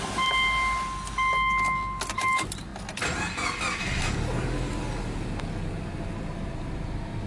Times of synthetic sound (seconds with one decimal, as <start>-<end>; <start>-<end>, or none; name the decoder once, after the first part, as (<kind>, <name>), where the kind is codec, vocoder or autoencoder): none